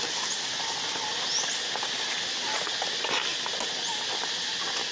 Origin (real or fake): real